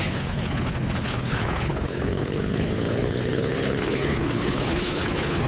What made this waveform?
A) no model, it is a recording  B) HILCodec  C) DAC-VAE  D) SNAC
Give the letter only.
B